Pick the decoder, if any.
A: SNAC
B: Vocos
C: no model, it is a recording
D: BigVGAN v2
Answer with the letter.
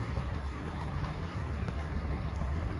A